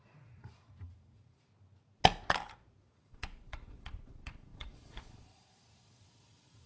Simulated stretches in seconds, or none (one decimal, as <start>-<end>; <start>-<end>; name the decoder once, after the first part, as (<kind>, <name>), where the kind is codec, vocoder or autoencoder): 0.0-1.5 (vocoder, Vocos); 2.8-6.7